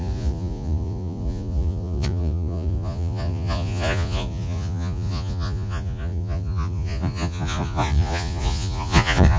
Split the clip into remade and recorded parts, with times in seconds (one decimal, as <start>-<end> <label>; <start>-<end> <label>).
0.0-9.4 remade